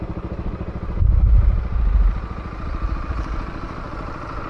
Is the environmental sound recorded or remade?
recorded